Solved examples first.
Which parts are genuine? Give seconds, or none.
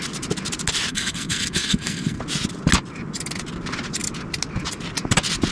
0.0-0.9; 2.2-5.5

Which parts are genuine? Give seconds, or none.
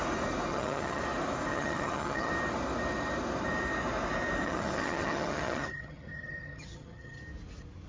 0.0-0.5; 1.0-1.5; 2.3-4.4; 7.2-7.9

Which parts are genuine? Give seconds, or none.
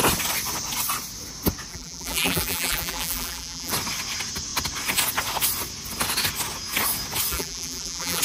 0.0-1.7; 3.7-7.3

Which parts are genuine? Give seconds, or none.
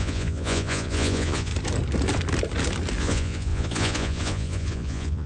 1.5-3.0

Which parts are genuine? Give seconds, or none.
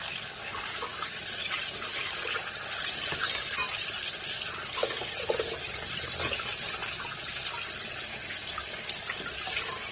0.0-9.9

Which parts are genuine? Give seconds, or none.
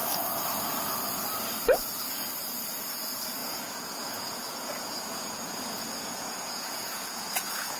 0.0-3.4